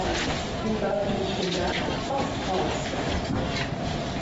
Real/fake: real